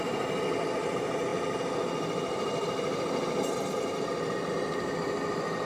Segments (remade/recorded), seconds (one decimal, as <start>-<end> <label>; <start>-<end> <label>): 0.0-5.7 recorded